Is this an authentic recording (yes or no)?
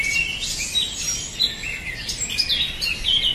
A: yes